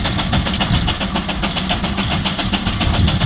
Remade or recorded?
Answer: recorded